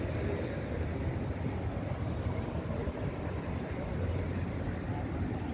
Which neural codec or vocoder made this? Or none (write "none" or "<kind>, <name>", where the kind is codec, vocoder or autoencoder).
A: none